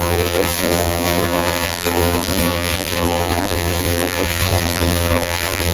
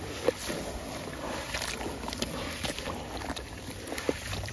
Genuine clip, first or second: second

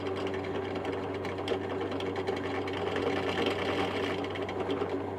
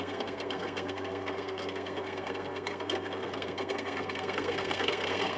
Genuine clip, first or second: first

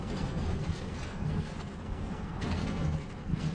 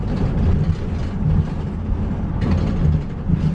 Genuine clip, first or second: second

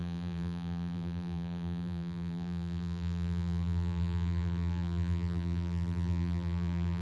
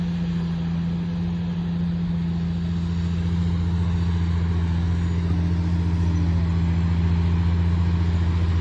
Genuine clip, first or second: second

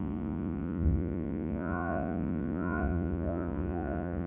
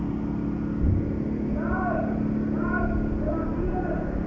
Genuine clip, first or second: second